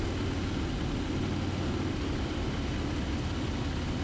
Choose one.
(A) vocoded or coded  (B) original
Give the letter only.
B